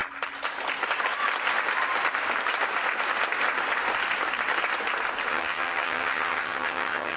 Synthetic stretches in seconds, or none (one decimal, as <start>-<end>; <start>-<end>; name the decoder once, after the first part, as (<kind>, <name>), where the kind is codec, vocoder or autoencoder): 5.3-7.2 (vocoder, HiFi-GAN)